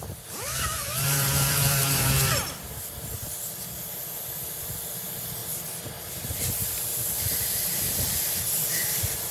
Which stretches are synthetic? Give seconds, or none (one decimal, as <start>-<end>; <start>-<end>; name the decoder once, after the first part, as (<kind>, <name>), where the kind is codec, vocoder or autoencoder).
0.0-5.4 (vocoder, BigVGAN v2); 6.2-9.3